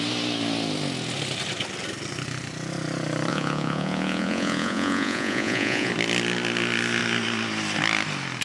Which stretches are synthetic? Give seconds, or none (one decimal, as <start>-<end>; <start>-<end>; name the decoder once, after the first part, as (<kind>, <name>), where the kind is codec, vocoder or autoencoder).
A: 3.3-5.9 (vocoder, Vocos)